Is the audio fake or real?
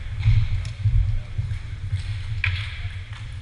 real